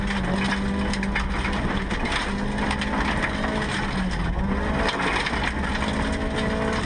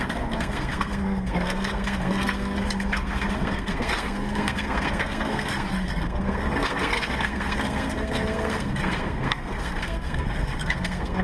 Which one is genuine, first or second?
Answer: first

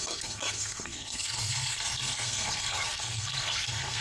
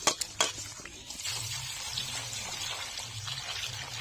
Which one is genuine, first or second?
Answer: second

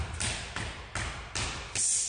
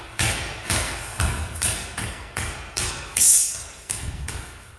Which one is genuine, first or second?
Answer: first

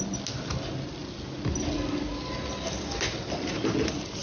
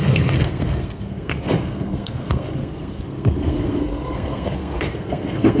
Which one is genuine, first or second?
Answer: first